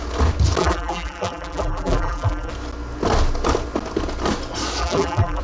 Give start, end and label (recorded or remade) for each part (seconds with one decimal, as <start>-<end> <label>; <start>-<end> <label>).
0.0-0.6 recorded; 0.6-2.5 remade; 2.5-4.8 recorded; 4.8-5.4 remade